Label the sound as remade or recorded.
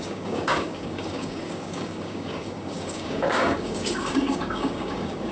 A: remade